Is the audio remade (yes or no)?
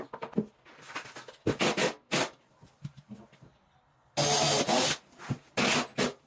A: no